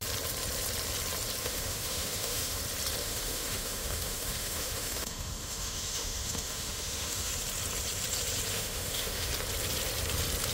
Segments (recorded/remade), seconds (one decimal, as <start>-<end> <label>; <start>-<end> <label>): 0.0-1.4 recorded; 1.4-2.6 remade; 2.6-3.0 recorded; 3.0-7.3 remade; 7.3-8.5 recorded; 8.5-9.3 remade; 9.3-10.5 recorded